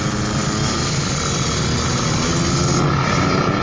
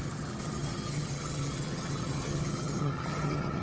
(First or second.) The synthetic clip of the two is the second